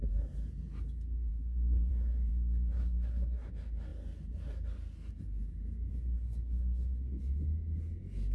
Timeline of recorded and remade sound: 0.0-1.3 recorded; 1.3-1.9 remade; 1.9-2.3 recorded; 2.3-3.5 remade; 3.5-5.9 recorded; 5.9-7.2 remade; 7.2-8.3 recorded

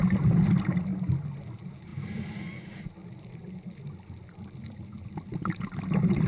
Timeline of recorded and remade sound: 0.0-6.3 recorded

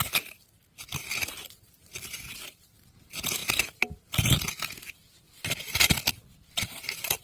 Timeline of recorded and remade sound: 0.0-3.4 recorded; 3.4-7.2 remade

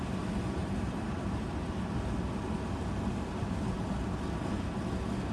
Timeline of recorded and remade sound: 0.0-5.3 recorded

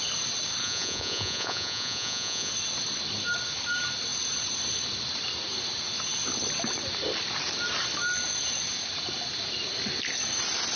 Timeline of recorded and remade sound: 0.0-0.6 recorded; 0.6-2.5 remade; 2.5-10.8 recorded

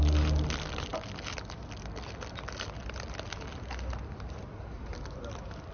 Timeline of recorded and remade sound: 0.0-5.7 recorded

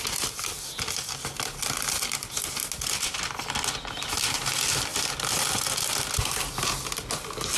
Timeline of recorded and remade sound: 0.0-7.6 recorded